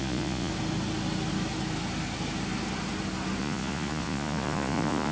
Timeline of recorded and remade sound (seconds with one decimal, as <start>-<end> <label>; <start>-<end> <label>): 0.0-0.5 remade; 0.5-3.4 recorded; 3.4-5.1 remade